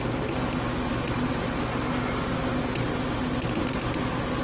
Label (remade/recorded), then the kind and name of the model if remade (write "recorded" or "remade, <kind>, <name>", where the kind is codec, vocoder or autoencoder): recorded